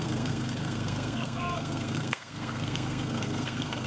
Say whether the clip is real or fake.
fake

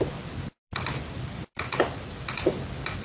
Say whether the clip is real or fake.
real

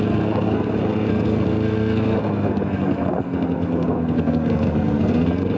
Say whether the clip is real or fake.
fake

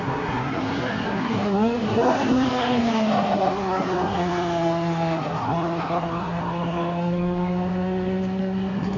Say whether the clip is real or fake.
fake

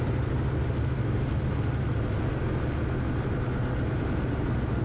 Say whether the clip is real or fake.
real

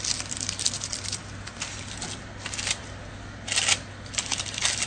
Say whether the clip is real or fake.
real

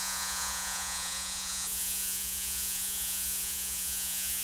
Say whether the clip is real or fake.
fake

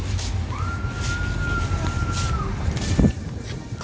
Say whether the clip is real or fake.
real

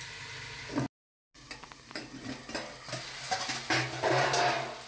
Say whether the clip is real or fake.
real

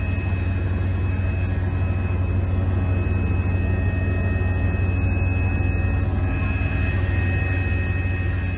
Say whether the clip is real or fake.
real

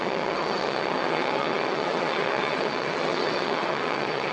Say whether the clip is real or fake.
fake